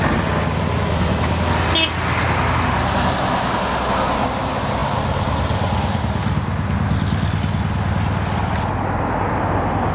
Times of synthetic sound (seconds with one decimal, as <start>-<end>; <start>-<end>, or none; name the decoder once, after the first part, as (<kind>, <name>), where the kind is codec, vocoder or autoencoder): none